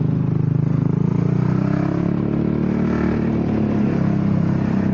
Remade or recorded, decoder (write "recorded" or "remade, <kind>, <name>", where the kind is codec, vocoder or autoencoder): recorded